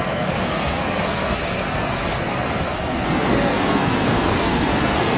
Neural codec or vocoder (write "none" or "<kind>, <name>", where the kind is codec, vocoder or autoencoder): codec, SNAC